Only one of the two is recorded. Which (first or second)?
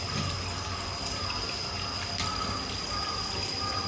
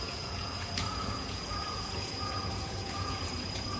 first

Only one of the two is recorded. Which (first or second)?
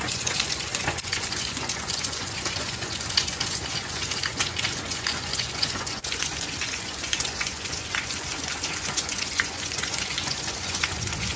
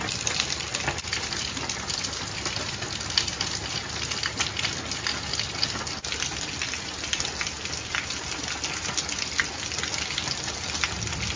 second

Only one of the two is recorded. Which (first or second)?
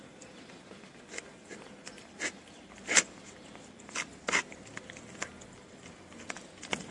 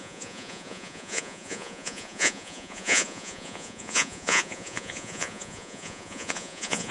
first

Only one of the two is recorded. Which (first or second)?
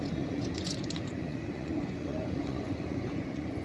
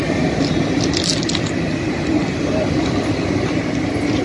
second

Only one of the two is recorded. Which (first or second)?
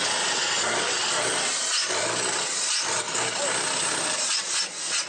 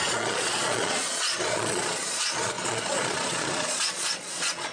first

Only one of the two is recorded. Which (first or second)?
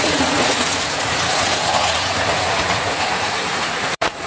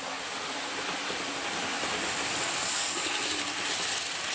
second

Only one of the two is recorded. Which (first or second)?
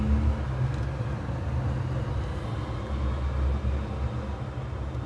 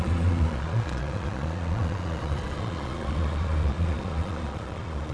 first